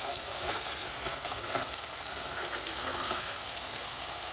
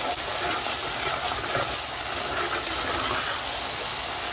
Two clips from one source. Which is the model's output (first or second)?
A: first